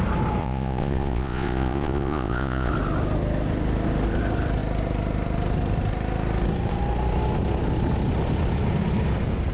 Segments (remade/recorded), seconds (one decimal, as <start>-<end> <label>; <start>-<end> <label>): 0.0-0.4 recorded; 0.4-2.7 remade; 2.7-9.5 recorded